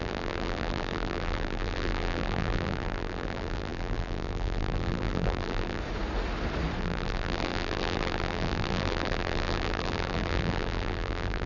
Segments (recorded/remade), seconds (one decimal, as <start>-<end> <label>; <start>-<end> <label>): 0.0-5.8 remade; 5.8-6.8 recorded; 6.8-11.5 remade